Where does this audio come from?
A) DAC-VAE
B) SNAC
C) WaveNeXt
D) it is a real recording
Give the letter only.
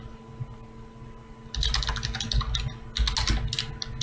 D